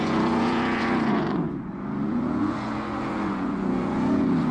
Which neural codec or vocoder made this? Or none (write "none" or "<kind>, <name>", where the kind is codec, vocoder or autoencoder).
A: vocoder, Vocos